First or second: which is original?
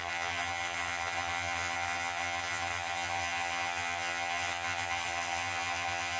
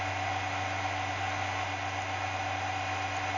second